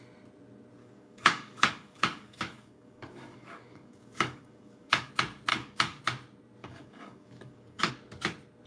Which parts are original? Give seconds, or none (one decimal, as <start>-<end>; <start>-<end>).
0.0-0.8; 5.1-5.5; 6.0-6.6; 7.9-8.7